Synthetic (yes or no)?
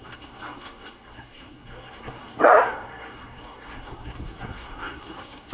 yes